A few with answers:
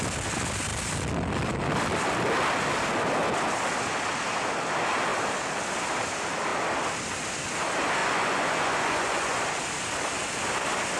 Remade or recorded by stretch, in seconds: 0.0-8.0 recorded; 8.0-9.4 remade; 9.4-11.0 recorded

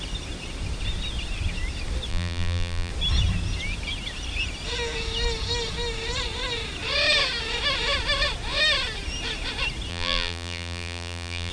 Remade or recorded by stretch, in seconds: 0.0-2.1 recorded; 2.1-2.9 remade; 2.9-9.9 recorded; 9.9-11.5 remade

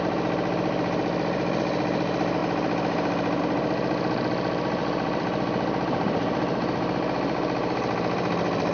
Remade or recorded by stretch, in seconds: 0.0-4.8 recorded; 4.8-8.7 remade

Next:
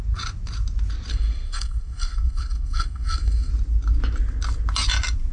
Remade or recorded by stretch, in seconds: 0.0-1.1 recorded; 1.1-3.5 remade; 3.5-5.3 recorded

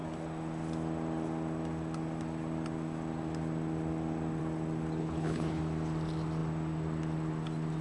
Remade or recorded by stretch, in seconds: 0.0-5.0 recorded; 5.0-5.6 remade; 5.6-7.8 recorded